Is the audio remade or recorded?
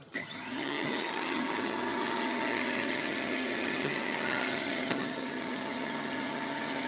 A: remade